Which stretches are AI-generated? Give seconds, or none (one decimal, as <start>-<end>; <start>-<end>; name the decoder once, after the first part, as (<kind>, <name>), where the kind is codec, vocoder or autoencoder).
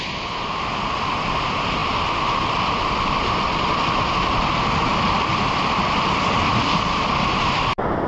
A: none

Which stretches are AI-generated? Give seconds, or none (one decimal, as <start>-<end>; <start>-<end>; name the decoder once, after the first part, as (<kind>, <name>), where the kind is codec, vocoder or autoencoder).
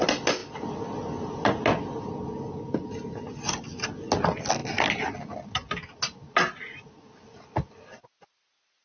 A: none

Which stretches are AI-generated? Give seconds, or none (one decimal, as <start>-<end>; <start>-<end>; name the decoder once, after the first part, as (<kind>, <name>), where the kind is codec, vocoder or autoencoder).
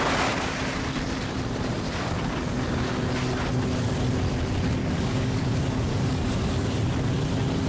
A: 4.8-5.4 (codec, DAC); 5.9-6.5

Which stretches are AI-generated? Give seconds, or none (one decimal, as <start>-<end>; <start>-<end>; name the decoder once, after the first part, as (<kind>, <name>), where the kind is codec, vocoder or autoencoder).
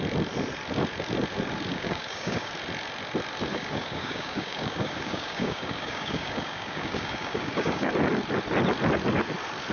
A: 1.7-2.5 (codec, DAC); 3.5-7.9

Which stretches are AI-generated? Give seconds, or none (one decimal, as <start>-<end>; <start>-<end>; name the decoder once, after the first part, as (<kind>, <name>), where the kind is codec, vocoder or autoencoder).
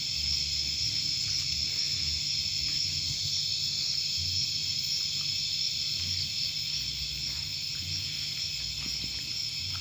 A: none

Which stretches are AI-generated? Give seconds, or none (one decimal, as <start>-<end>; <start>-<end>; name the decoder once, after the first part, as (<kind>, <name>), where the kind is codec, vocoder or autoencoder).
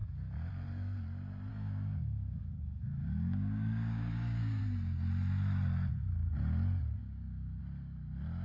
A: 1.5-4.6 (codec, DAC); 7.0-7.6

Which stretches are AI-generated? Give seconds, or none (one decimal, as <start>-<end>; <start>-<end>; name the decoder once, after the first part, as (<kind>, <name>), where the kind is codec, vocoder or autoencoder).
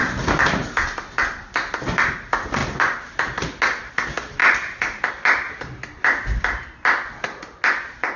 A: none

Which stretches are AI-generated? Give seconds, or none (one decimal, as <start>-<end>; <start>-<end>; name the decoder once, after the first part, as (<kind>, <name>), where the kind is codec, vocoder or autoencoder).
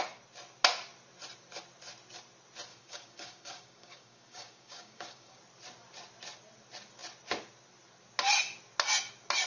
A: 2.7-5.4 (codec, DAC)